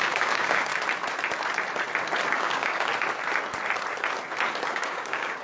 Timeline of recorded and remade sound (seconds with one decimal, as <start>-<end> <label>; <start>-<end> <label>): 0.0-0.7 remade; 0.7-2.4 recorded; 2.4-2.9 remade; 2.9-4.7 recorded; 4.7-5.4 remade